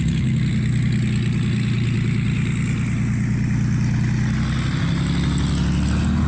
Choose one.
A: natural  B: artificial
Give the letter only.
A